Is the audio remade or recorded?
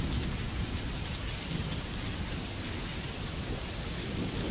recorded